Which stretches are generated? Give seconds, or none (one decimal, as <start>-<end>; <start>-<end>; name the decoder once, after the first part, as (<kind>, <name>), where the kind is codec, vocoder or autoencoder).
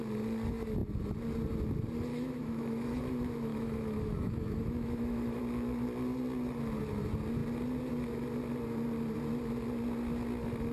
2.1-3.0 (autoencoder, DAC-VAE); 3.5-5.4